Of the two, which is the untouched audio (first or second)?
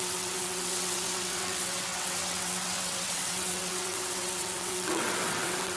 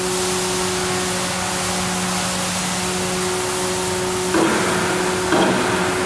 second